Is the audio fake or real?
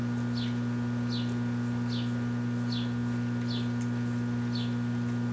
real